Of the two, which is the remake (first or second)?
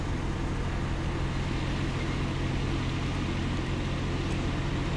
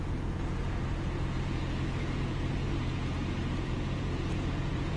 second